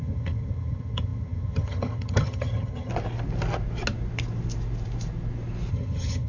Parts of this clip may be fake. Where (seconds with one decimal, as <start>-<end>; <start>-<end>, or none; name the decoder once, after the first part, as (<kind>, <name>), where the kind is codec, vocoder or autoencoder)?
0.0-2.9 (vocoder, HiFi-GAN); 5.7-6.3